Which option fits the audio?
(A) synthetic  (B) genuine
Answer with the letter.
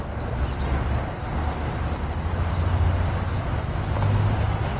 B